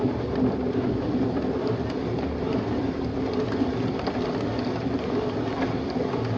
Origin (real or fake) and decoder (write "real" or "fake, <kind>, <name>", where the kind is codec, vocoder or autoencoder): real